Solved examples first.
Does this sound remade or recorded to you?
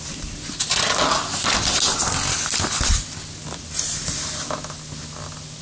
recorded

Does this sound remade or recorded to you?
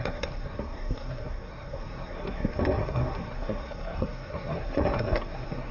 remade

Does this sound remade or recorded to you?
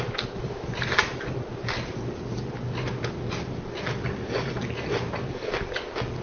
recorded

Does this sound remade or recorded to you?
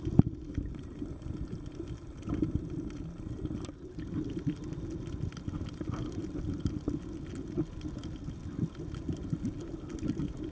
recorded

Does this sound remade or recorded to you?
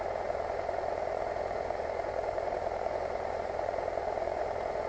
remade